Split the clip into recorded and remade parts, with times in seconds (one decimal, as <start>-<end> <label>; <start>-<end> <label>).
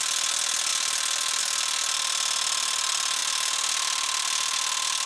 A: 0.0-5.1 recorded